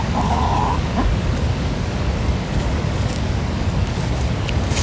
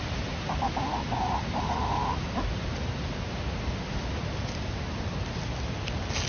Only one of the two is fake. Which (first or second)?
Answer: first